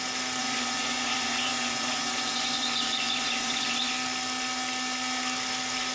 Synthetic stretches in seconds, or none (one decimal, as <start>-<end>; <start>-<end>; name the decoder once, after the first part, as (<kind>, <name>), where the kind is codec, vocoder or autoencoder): 0.4-3.9 (vocoder, Vocos)